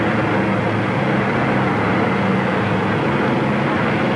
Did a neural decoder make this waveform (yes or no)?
no